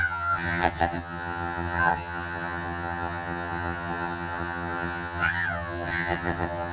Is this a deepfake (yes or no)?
yes